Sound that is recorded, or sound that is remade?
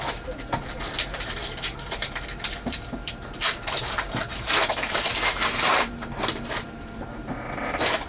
remade